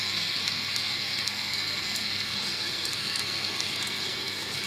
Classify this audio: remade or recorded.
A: remade